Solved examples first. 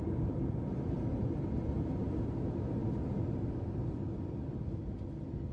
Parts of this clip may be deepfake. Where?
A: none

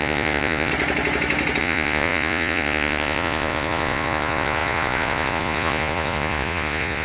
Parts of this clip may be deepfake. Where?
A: 0.0-0.7 (vocoder, Vocos); 1.6-7.0